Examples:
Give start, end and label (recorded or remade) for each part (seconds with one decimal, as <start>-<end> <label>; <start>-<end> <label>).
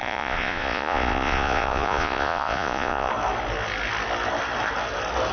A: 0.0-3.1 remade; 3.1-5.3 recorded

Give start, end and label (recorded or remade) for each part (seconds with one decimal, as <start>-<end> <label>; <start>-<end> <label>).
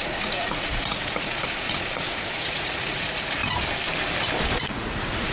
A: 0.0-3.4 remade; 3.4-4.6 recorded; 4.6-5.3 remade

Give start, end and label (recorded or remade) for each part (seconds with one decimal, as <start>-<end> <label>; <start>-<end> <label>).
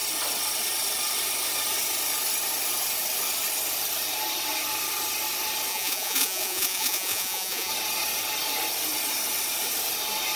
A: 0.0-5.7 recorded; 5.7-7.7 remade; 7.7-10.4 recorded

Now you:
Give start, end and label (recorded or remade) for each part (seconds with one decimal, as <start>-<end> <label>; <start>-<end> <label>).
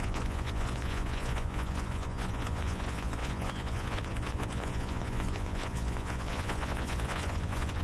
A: 0.0-7.8 remade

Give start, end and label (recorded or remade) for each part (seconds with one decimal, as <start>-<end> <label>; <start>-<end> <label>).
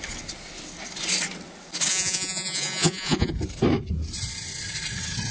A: 0.0-1.9 recorded; 1.9-3.3 remade; 3.3-5.3 recorded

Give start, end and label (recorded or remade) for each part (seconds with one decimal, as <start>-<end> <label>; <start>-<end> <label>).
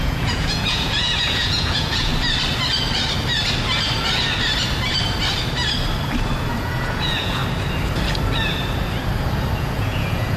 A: 0.0-2.1 remade; 2.1-6.6 recorded; 6.6-7.4 remade; 7.4-9.6 recorded; 9.6-10.4 remade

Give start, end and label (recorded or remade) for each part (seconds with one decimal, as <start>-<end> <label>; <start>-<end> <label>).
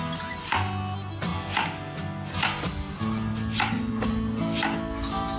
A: 0.0-5.4 recorded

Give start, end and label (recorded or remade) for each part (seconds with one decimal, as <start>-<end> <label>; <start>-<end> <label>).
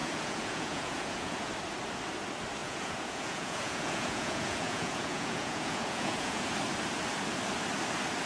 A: 0.0-1.5 remade; 1.5-2.6 recorded; 2.6-6.5 remade; 6.5-8.3 recorded